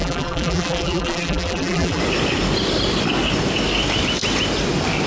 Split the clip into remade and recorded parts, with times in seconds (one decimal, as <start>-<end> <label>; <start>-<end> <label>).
0.0-2.0 remade; 2.0-5.1 recorded